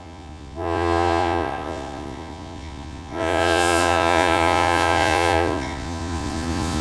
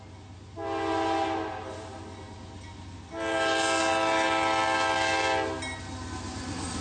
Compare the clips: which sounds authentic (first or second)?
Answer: second